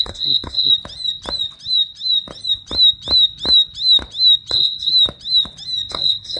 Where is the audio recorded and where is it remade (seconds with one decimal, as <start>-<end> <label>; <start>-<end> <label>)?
0.0-0.7 remade; 0.7-4.5 recorded; 4.5-4.9 remade; 4.9-5.9 recorded; 5.9-6.4 remade

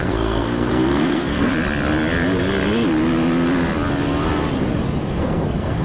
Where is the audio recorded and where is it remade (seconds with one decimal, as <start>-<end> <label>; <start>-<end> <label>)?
0.0-1.5 remade; 1.5-5.0 recorded; 5.0-5.8 remade

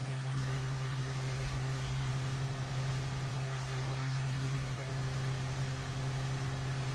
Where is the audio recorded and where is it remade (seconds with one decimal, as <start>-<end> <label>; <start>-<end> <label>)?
0.0-2.1 remade; 2.1-3.3 recorded; 3.3-4.9 remade; 4.9-6.9 recorded

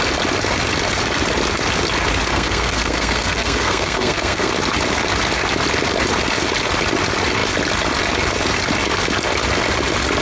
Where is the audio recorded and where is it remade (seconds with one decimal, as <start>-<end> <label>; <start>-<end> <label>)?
0.0-2.3 recorded; 2.3-4.5 remade; 4.5-10.2 recorded

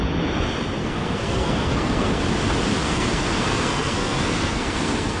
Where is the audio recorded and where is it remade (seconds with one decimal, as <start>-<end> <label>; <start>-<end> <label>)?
0.0-0.8 recorded; 0.8-2.2 remade; 2.2-2.8 recorded; 2.8-5.2 remade

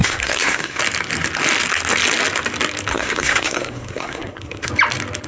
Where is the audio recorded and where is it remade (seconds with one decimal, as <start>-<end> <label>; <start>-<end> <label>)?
0.0-0.8 remade; 0.8-2.9 recorded; 2.9-4.7 remade; 4.7-5.3 recorded

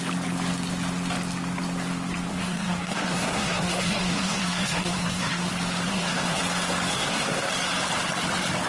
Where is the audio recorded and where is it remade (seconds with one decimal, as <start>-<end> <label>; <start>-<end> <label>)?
0.0-2.3 recorded; 2.3-5.5 remade; 5.5-5.9 recorded; 5.9-6.4 remade; 6.4-6.9 recorded; 6.9-7.5 remade; 7.5-8.7 recorded